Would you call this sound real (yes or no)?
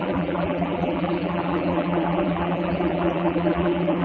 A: no